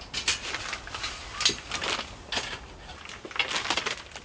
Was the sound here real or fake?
real